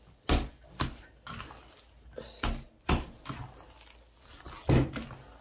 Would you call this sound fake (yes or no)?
no